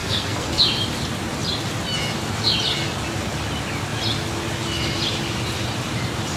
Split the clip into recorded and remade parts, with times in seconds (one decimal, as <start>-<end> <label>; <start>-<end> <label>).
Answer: 0.0-0.6 remade; 0.6-6.4 recorded